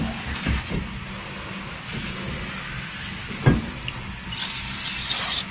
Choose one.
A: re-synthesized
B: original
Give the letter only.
B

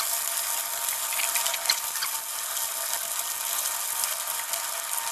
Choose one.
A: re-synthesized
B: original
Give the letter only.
B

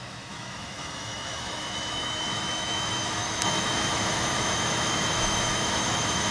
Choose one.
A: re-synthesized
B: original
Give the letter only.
A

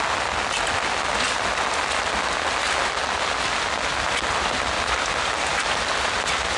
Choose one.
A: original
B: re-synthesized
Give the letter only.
A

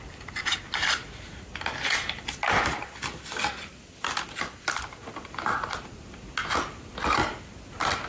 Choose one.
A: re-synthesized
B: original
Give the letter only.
B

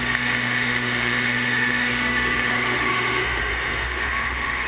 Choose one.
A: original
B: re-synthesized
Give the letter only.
B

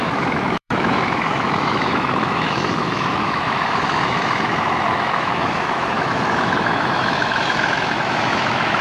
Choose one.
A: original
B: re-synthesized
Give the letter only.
B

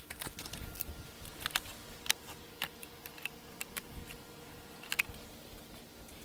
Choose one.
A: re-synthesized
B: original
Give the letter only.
B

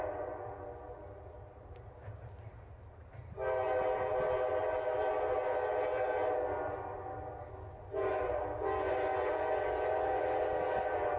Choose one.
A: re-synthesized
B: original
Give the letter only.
B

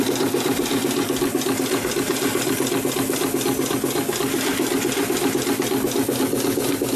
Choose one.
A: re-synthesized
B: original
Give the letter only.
B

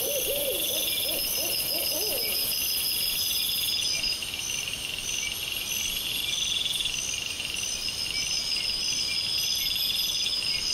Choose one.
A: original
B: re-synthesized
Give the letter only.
A